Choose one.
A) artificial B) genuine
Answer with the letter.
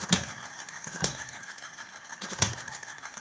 A